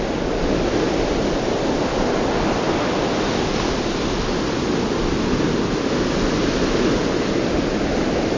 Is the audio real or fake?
real